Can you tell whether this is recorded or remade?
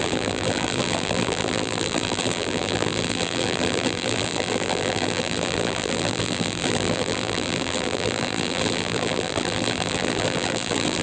remade